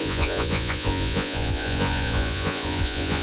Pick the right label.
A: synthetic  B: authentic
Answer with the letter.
A